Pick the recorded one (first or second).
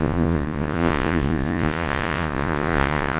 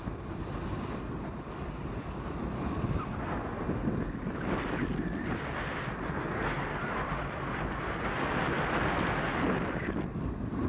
second